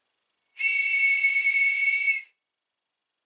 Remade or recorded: remade